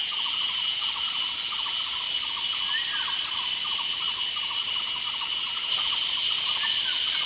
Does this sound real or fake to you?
real